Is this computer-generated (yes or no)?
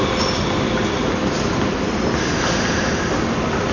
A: no